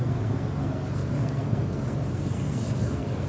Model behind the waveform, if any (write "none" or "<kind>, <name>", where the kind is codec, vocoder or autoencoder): codec, SNAC